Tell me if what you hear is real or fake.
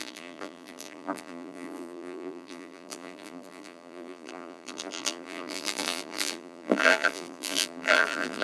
fake